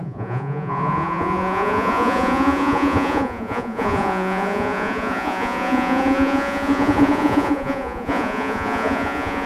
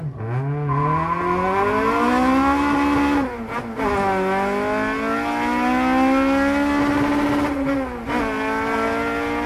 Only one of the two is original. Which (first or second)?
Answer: second